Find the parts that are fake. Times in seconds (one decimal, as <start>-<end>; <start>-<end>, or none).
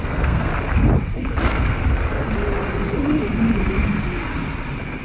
0.0-0.5; 1.4-1.8